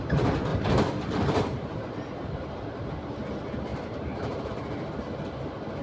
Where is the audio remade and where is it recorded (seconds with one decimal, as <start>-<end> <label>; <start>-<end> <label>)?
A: 0.0-0.5 recorded; 0.5-1.9 remade; 1.9-3.7 recorded; 3.7-4.5 remade; 4.5-5.8 recorded